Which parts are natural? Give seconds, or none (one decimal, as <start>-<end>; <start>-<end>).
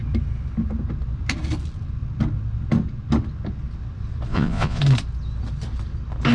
0.0-4.3; 4.8-6.3